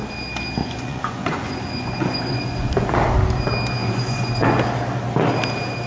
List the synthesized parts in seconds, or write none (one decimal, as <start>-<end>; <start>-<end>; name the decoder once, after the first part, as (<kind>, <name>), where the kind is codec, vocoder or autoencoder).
0.6-2.7 (vocoder, Vocos); 3.8-4.6